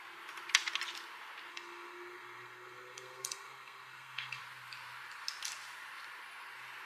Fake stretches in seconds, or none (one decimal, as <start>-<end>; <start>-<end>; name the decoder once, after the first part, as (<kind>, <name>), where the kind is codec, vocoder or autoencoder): 1.5-4.4 (codec, SNAC)